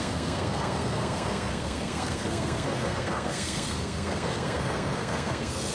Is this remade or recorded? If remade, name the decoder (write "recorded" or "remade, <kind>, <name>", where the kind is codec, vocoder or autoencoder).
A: remade, codec, SNAC